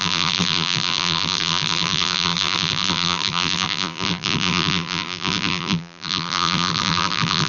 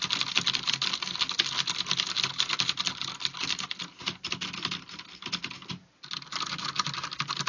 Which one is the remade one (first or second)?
first